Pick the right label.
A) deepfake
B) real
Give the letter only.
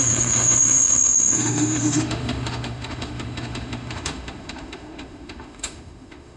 A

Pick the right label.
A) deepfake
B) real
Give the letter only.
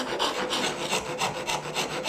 B